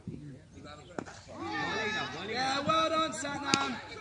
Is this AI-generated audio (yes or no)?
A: no